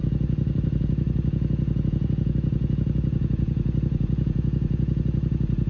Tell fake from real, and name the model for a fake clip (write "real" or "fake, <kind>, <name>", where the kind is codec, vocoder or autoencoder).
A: fake, vocoder, Vocos